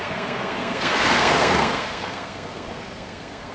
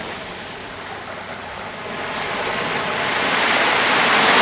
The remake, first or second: first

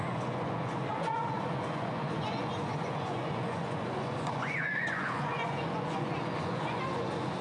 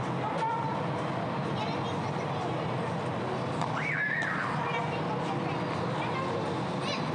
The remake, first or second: first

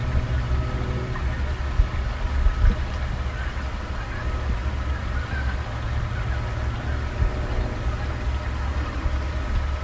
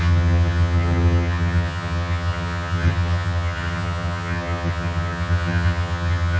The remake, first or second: second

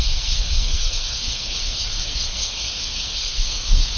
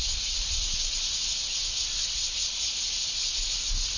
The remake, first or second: first